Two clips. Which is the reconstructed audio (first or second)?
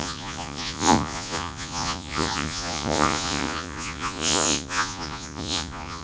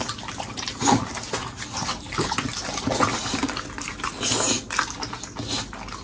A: first